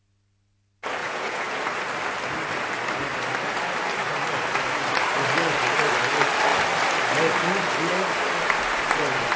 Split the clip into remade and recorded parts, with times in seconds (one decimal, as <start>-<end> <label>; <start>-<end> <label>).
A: 0.0-1.0 recorded; 1.0-1.7 remade; 1.7-9.4 recorded